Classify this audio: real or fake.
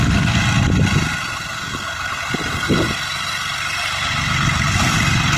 real